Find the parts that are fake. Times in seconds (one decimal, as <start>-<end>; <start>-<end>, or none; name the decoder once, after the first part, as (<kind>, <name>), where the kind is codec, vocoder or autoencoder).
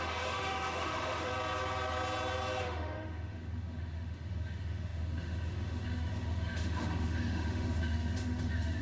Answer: 0.0-1.3 (autoencoder, DAC-VAE); 2.6-8.8